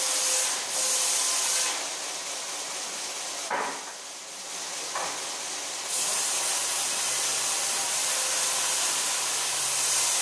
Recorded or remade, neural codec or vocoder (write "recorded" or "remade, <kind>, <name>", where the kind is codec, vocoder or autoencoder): recorded